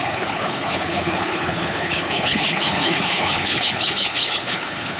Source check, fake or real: fake